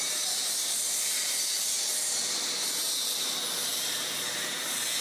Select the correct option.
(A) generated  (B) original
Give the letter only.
B